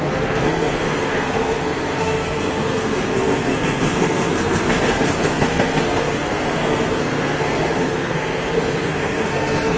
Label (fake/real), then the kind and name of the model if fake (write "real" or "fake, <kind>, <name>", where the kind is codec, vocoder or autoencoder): fake, codec, SNAC